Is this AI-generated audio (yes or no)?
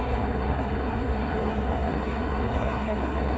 yes